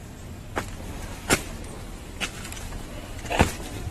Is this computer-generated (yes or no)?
no